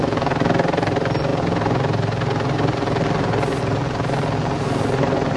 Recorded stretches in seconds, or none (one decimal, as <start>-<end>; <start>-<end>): 0.0-5.4